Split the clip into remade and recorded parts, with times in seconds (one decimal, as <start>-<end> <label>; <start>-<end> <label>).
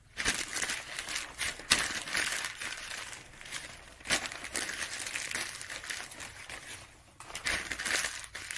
0.0-8.6 recorded